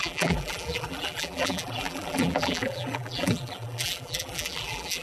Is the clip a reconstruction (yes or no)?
yes